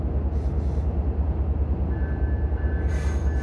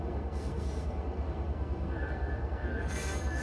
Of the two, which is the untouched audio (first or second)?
first